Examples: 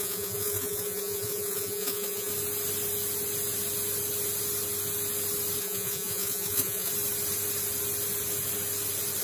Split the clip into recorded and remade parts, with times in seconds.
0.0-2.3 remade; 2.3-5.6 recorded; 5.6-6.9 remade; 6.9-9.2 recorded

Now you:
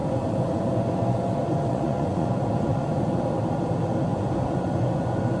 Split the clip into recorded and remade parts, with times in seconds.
0.0-3.2 remade; 3.2-4.1 recorded; 4.1-5.4 remade

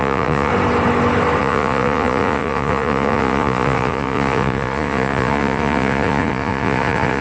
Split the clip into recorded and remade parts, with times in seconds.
0.0-0.5 remade; 0.5-1.4 recorded; 1.4-7.2 remade

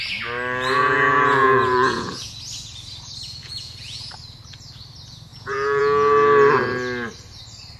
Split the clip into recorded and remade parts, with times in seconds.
0.0-0.8 recorded; 0.8-2.3 remade; 2.3-3.4 recorded; 3.4-4.1 remade; 4.1-5.3 recorded; 5.3-5.8 remade; 5.8-7.8 recorded